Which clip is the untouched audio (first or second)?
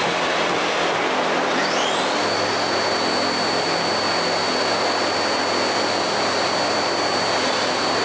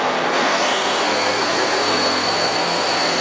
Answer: first